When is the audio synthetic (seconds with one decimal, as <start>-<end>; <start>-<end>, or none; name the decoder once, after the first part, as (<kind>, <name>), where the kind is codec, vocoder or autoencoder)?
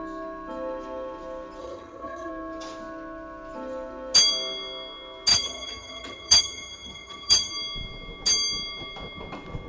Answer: 1.6-2.3 (vocoder, HiFi-GAN); 5.3-7.5